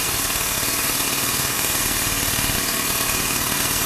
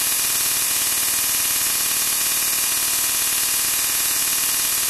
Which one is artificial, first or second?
first